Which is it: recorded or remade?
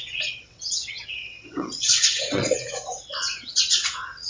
remade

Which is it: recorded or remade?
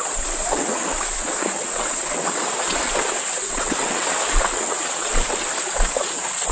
remade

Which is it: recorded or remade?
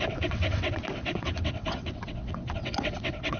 remade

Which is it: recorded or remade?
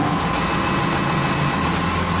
recorded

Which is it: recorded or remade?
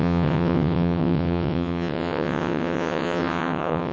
remade